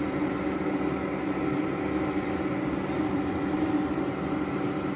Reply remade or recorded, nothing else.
recorded